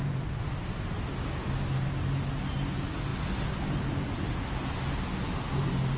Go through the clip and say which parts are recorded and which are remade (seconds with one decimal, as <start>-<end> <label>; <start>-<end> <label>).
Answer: 0.0-0.9 remade; 0.9-6.0 recorded